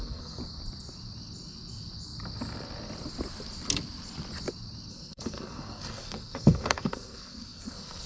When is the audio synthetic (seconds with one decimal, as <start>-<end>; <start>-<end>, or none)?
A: 0.0-0.4; 4.9-8.1